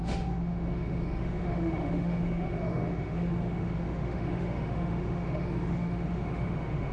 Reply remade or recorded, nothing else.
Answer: remade